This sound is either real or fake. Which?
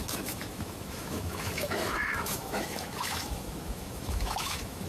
fake